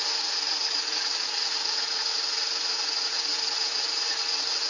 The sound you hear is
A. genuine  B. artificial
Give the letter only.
B